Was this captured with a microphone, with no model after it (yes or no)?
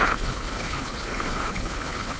no